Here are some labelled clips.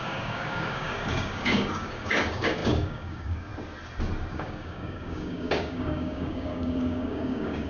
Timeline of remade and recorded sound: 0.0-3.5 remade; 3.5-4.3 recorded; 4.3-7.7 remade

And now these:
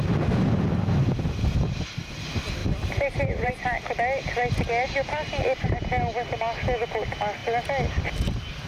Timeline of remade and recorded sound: 0.0-2.6 recorded; 2.6-3.5 remade; 3.5-8.7 recorded